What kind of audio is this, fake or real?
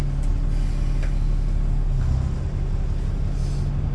real